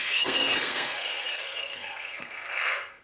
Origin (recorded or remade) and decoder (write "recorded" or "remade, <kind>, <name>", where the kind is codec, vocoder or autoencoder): remade, codec, SNAC